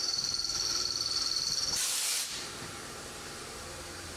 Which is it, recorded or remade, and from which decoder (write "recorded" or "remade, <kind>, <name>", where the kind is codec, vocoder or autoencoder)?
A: remade, vocoder, BigVGAN v2